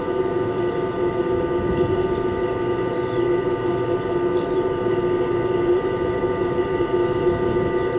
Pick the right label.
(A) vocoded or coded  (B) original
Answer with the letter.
B